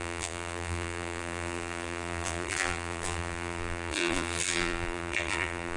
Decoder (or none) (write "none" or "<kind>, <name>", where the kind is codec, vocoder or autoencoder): vocoder, BigVGAN v2